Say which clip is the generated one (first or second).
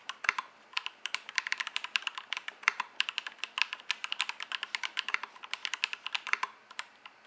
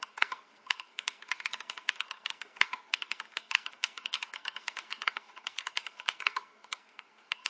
second